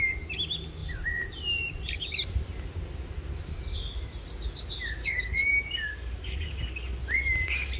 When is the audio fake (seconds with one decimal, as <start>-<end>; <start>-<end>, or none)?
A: 5.0-7.0